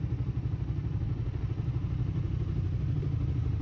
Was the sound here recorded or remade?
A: recorded